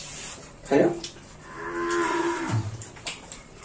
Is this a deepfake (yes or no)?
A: yes